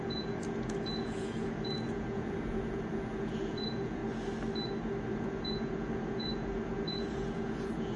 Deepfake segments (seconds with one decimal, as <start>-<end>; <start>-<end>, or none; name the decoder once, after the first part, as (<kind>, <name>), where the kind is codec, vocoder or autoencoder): 0.0-4.0 (vocoder, Vocos); 5.1-8.0